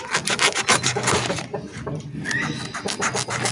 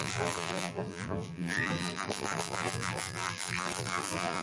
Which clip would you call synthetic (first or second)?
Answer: second